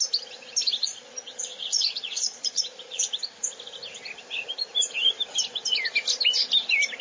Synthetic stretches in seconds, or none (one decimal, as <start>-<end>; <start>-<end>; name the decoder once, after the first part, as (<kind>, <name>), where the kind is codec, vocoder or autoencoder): 0.8-3.1 (vocoder, Vocos)

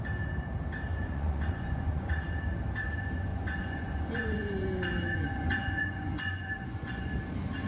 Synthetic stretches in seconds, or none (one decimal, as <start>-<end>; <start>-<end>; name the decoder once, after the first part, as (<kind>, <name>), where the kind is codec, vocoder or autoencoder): 0.9-2.2 (vocoder, Vocos); 3.3-7.1

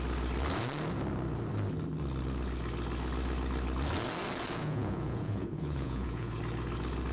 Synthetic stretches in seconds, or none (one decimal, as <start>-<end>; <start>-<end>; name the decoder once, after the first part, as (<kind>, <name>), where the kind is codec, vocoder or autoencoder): 4.6-6.4 (vocoder, Vocos)